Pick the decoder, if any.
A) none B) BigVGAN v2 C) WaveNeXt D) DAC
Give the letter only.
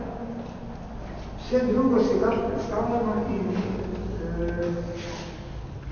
A